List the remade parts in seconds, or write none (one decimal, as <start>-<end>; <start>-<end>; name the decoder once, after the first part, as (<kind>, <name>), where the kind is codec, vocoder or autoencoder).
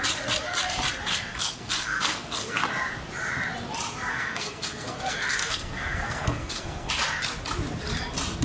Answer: 1.1-2.6 (codec, SNAC); 4.1-6.9